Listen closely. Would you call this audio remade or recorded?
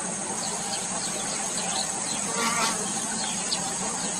recorded